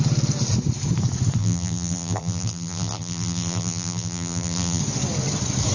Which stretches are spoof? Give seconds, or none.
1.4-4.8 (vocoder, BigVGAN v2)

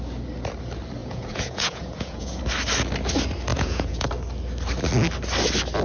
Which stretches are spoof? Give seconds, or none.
1.0-2.4 (vocoder, Vocos); 3.5-4.1

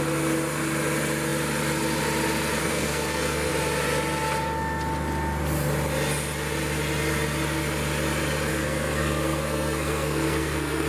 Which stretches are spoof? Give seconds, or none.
2.6-3.5 (codec, SNAC); 8.5-10.9